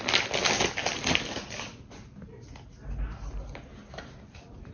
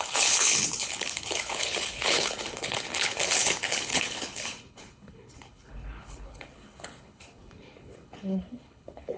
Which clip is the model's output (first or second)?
second